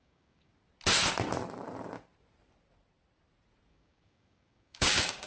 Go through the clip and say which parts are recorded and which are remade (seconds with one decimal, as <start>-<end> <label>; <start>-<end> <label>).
0.0-0.5 remade; 0.5-3.7 recorded; 3.7-5.3 remade